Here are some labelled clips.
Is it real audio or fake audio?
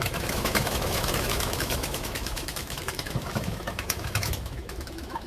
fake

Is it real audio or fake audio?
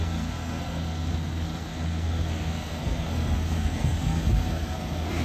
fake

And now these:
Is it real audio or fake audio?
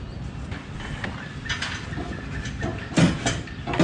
real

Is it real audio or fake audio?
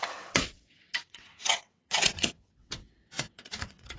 fake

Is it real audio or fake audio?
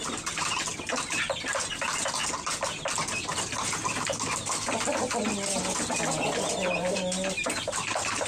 real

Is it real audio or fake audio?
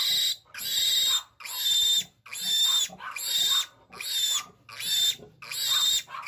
real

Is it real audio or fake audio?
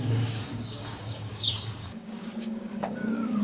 fake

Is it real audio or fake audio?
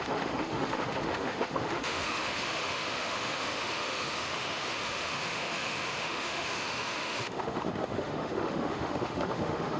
fake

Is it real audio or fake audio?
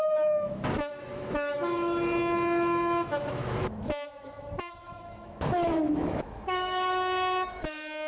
fake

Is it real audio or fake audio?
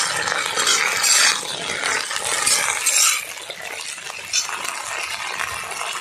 real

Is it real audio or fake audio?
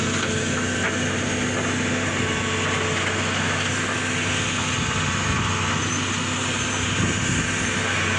real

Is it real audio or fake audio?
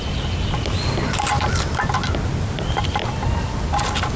real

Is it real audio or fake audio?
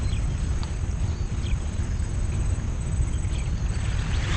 real